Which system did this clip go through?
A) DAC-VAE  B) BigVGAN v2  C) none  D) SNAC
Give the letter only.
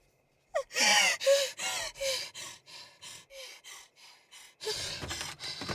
C